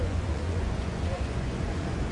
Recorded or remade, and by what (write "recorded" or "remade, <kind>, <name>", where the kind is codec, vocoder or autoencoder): remade, vocoder, Vocos